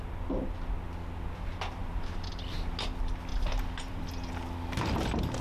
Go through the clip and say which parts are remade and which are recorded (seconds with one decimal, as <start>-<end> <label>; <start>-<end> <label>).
0.0-1.8 recorded; 1.8-2.6 remade; 2.6-3.3 recorded; 3.3-4.3 remade; 4.3-5.4 recorded